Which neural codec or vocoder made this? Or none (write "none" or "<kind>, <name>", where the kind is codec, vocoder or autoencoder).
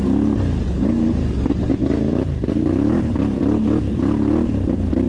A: none